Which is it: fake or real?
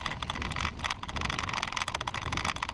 real